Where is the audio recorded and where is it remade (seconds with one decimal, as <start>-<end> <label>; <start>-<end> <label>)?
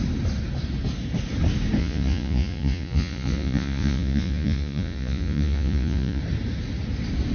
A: 0.0-1.8 recorded; 1.8-6.2 remade; 6.2-7.3 recorded